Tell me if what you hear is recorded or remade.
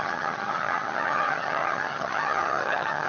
remade